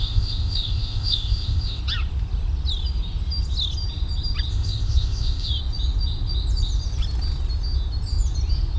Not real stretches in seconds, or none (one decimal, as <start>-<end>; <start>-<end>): 0.0-1.8; 4.5-5.5